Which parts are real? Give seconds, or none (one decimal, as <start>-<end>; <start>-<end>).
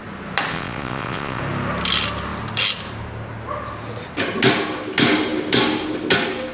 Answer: 0.0-0.5; 1.4-6.5